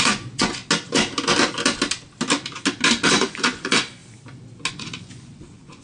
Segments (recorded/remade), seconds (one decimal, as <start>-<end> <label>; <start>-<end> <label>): 0.0-0.6 remade; 0.6-3.1 recorded; 3.1-4.0 remade; 4.0-4.7 recorded; 4.7-5.8 remade